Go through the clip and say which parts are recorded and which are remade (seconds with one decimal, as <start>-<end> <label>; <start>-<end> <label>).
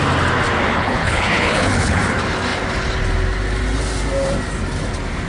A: 0.0-0.7 recorded; 0.7-2.0 remade; 2.0-5.3 recorded